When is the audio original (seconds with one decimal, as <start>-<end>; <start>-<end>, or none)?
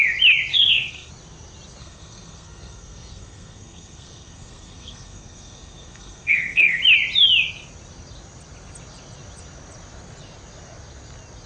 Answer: 0.0-0.5; 1.1-1.8; 6.8-11.5